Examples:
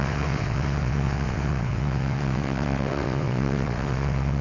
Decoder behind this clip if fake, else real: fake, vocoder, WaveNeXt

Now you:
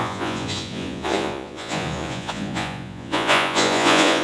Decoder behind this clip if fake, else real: fake, vocoder, Vocos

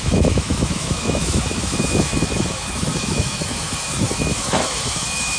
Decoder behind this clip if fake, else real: fake, autoencoder, DAC-VAE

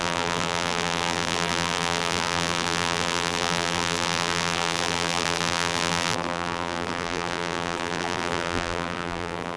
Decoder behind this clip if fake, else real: fake, vocoder, BigVGAN v2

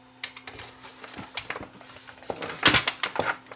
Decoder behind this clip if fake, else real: real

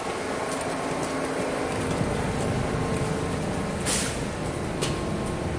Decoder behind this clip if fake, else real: real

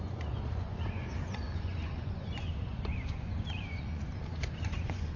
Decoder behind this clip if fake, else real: fake, vocoder, Vocos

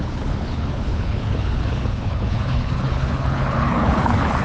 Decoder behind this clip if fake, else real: fake, codec, HILCodec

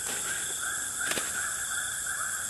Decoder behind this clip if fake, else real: real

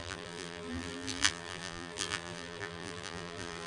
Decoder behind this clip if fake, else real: fake, vocoder, BigVGAN v2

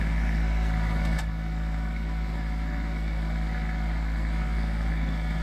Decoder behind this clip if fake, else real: fake, codec, SNAC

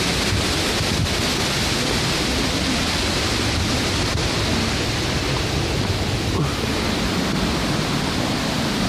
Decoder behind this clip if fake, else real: real